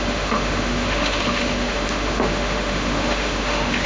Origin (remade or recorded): remade